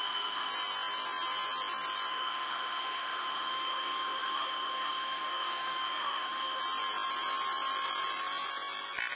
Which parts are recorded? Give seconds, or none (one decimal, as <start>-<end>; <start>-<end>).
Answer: 0.5-2.1; 6.6-9.2